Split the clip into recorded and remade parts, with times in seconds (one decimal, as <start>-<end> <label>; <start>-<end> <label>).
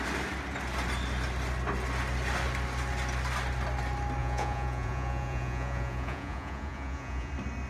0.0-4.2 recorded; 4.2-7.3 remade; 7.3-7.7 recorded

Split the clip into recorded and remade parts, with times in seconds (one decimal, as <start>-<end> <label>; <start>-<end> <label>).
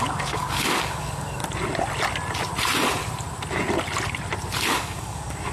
0.0-1.4 remade; 1.4-4.7 recorded; 4.7-5.5 remade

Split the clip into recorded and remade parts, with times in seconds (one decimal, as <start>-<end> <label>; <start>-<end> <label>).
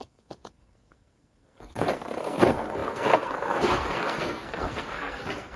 0.0-5.6 remade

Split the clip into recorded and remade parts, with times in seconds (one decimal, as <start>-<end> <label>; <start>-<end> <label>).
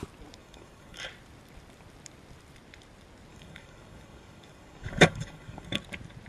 0.0-0.4 recorded; 0.4-1.1 remade; 1.1-3.3 recorded; 3.3-5.8 remade; 5.8-6.3 recorded